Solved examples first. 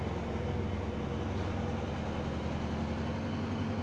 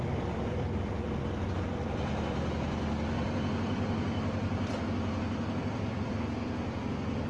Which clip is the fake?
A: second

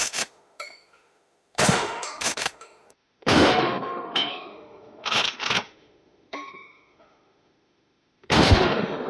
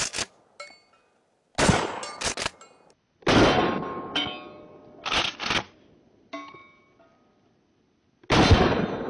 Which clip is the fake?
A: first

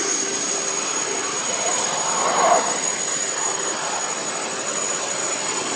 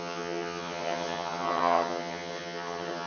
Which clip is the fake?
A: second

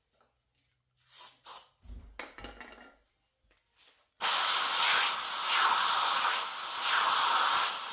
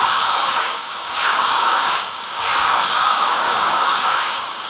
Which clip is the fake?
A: second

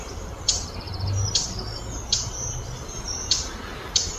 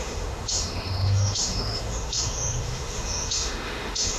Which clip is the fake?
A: second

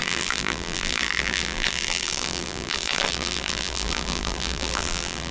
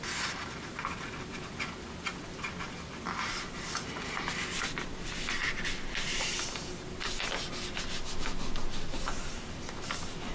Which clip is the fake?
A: first